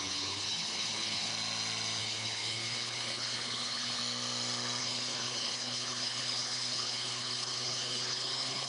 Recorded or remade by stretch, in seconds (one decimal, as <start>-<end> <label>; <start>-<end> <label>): 0.0-1.3 remade; 1.3-2.0 recorded; 2.0-4.0 remade; 4.0-4.8 recorded; 4.8-8.7 remade

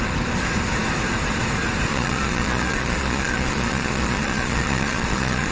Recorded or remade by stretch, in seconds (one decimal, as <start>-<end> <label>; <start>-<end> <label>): 0.0-1.9 recorded; 1.9-5.5 remade